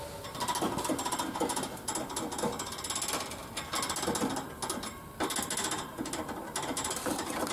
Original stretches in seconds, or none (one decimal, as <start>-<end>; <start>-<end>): 0.0-7.5